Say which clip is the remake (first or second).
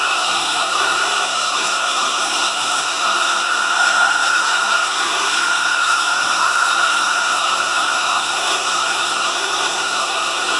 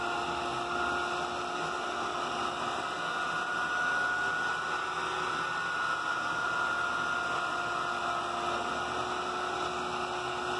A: first